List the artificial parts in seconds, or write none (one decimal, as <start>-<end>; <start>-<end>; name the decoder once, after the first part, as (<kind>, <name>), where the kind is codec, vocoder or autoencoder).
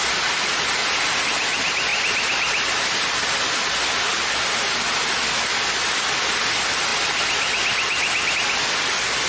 none